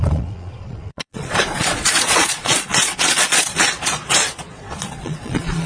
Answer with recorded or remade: remade